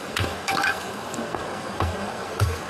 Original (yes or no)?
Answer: no